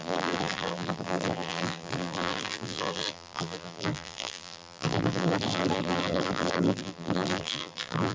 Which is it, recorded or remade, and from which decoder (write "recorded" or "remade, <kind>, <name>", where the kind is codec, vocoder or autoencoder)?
remade, vocoder, BigVGAN v2